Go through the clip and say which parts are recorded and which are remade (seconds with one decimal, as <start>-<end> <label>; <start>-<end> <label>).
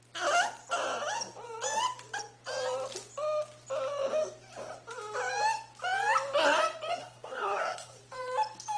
0.0-7.0 recorded; 7.0-8.0 remade; 8.0-8.8 recorded